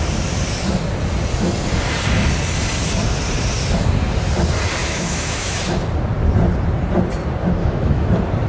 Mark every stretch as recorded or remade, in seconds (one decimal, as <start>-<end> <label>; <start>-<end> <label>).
0.0-4.8 recorded; 4.8-5.6 remade; 5.6-7.6 recorded; 7.6-8.1 remade; 8.1-8.5 recorded